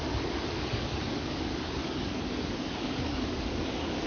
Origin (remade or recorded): remade